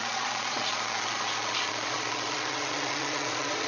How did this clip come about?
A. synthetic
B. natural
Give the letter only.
A